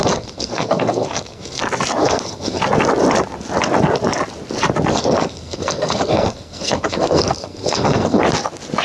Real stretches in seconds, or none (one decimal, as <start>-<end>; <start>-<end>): 1.6-2.0; 2.6-4.9; 8.2-8.8